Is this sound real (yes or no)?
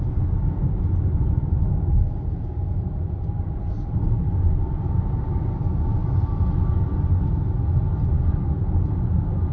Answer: yes